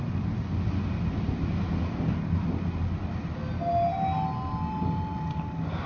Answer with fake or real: real